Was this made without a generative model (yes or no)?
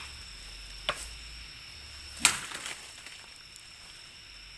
yes